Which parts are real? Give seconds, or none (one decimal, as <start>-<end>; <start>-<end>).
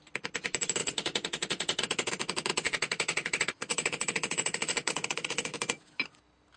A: 0.0-0.8; 2.1-2.5; 5.5-6.6